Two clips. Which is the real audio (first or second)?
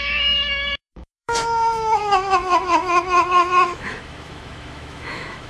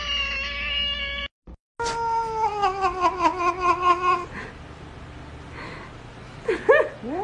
second